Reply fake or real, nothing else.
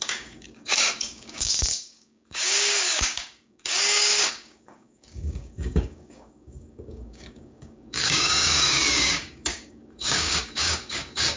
fake